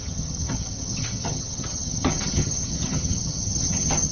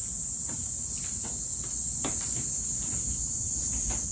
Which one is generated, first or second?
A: first